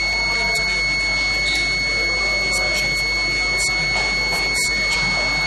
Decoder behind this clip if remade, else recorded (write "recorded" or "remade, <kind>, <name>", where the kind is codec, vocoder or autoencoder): recorded